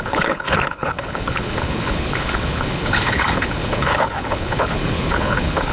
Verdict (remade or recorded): remade